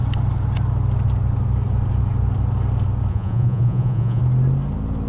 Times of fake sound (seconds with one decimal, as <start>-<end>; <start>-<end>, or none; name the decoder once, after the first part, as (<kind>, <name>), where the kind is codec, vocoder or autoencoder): 3.1-4.2 (vocoder, Vocos)